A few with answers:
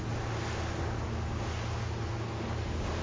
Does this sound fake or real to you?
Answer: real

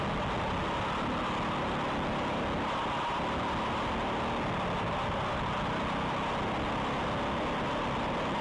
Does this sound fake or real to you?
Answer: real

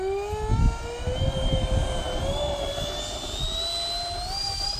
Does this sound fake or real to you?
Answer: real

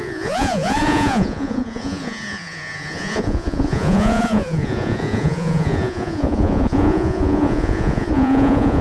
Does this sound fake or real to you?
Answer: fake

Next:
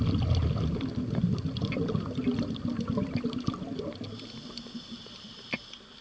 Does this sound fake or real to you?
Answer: real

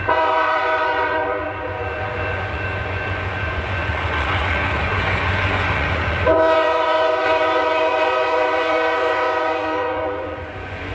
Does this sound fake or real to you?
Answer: fake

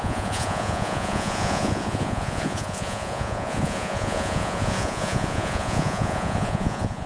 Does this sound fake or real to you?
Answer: fake